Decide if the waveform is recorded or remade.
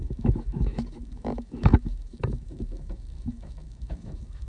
remade